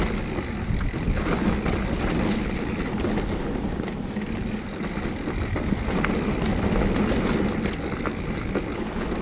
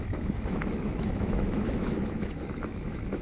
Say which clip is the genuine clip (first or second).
first